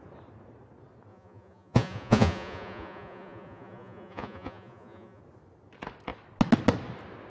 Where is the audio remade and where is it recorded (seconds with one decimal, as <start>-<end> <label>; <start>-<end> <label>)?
0.0-1.1 recorded; 1.1-5.2 remade; 5.2-7.3 recorded